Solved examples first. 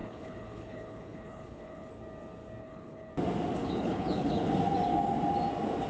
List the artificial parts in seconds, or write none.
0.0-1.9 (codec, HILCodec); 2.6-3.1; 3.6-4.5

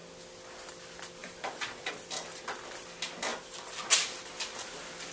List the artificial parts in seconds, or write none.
1.2-1.9 (vocoder, BigVGAN v2); 3.3-3.8

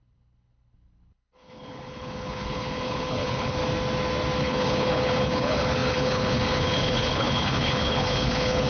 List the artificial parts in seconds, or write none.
0.0-3.6 (codec, HILCodec); 4.4-8.7

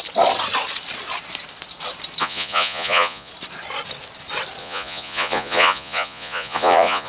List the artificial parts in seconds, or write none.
2.2-3.3 (vocoder, Vocos); 4.6-7.1

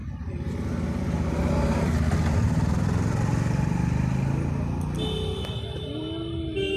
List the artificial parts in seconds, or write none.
none

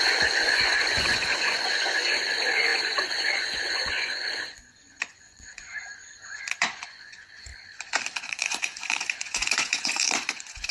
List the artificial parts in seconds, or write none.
0.0-7.5 (vocoder, Vocos); 8.2-10.7